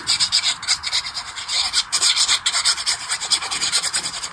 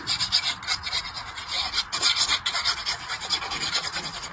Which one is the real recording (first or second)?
second